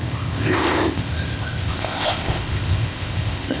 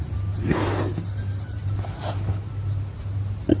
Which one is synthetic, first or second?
first